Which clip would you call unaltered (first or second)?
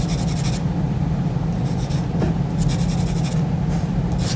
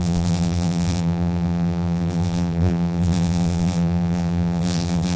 first